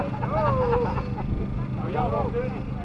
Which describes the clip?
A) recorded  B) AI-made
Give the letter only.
A